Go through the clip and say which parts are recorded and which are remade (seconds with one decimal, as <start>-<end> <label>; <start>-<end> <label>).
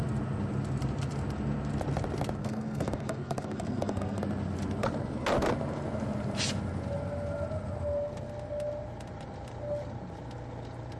0.0-2.4 recorded; 2.4-4.2 remade; 4.2-11.0 recorded